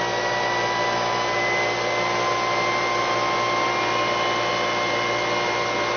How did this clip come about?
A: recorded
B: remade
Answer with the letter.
A